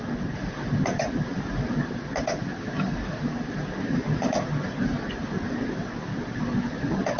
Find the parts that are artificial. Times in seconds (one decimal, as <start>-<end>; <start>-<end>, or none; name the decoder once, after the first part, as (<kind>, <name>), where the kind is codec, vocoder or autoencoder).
none